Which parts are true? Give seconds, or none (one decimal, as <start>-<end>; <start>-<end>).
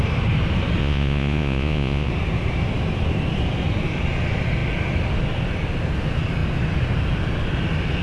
0.0-0.8; 2.1-8.0